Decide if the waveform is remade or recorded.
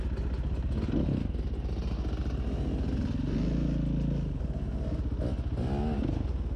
recorded